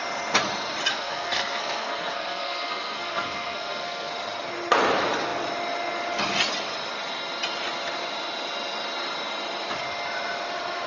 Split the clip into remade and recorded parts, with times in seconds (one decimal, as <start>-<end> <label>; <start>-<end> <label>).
0.0-0.9 recorded; 0.9-4.1 remade; 4.1-10.9 recorded